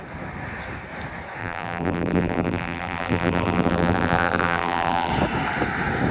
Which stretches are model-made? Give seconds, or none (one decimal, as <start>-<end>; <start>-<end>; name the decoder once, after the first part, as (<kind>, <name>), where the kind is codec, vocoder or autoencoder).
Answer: 1.4-5.1 (vocoder, BigVGAN v2)